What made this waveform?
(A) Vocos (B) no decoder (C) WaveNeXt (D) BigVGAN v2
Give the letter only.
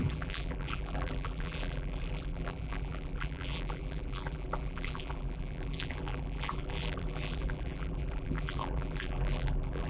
D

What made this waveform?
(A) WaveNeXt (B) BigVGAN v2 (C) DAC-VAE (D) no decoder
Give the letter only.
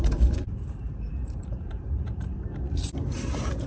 B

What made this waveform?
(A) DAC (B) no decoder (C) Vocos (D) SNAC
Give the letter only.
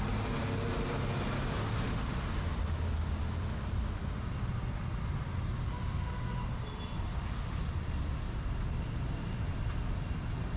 B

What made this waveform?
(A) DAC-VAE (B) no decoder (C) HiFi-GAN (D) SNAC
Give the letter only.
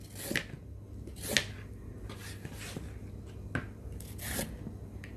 B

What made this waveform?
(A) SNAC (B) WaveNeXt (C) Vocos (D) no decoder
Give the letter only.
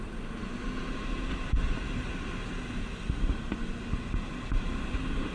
D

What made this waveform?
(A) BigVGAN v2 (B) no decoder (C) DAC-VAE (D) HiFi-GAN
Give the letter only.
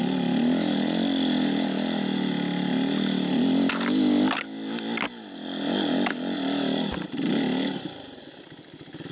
B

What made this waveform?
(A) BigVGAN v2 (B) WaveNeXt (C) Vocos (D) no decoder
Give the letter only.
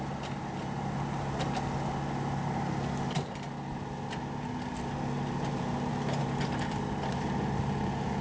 D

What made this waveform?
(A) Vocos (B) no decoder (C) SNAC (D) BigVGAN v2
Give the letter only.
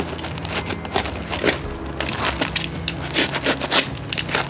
B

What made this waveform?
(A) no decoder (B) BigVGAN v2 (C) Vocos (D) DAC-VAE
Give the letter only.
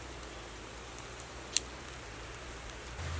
A